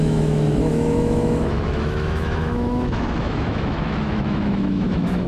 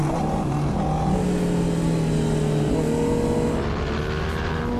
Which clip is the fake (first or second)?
first